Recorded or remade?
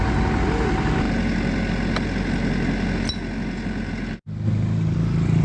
recorded